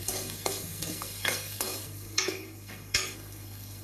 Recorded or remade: remade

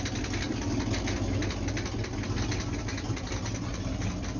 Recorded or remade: recorded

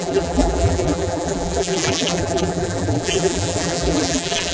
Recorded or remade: remade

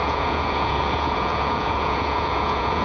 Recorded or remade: remade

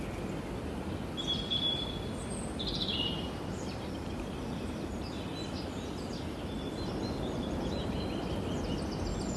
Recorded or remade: recorded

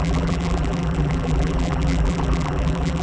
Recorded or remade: remade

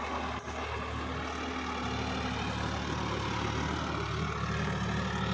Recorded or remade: recorded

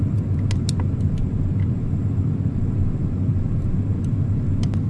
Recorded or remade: recorded